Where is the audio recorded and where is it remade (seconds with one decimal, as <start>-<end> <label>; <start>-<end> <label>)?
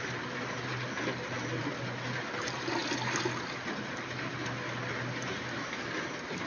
0.0-6.5 recorded